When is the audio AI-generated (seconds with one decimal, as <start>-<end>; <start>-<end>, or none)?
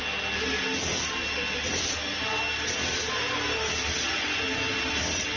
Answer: none